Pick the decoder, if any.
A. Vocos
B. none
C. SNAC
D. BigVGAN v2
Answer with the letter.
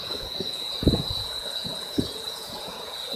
A